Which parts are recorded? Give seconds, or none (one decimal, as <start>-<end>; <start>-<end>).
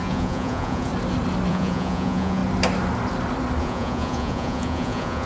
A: 0.9-1.5; 2.4-3.6